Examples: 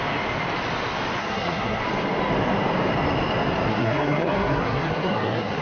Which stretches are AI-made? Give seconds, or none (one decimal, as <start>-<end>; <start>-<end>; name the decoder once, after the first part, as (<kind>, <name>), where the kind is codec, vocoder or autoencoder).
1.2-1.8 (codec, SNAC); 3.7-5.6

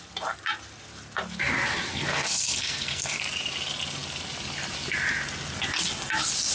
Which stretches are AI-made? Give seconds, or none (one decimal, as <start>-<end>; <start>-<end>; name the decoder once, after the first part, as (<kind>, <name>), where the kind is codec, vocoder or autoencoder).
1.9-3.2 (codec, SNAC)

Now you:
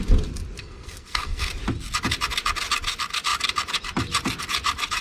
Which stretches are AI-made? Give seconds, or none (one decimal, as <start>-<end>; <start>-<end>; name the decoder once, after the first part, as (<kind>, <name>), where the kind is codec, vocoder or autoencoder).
0.6-1.5 (codec, SNAC)

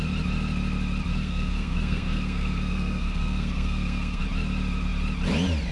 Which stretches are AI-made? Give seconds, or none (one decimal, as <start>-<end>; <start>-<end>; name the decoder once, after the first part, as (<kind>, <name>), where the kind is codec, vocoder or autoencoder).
1.1-4.2 (codec, SNAC)

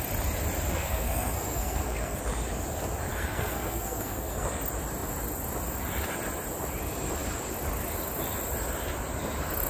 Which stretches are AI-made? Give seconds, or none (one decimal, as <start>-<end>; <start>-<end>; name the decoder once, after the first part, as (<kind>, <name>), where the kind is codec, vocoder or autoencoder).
0.7-2.2 (codec, SNAC); 3.1-4.6